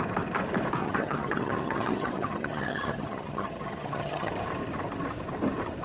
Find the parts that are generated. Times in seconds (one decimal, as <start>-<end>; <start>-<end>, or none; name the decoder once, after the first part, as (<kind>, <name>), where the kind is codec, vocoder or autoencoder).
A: 0.8-4.3 (vocoder, HiFi-GAN)